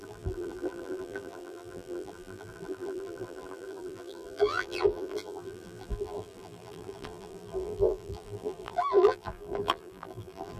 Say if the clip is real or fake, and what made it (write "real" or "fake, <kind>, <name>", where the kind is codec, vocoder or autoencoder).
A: fake, vocoder, BigVGAN v2